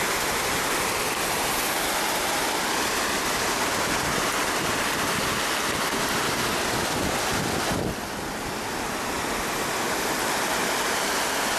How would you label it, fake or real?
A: real